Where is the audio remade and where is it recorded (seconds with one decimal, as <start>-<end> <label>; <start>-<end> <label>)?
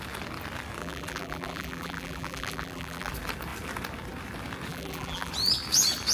0.0-0.8 recorded; 0.8-3.1 remade; 3.1-4.7 recorded; 4.7-5.3 remade; 5.3-6.1 recorded